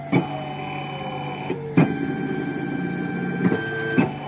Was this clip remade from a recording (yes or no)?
no